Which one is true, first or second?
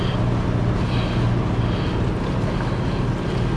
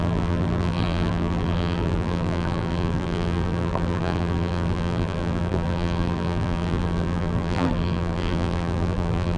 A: first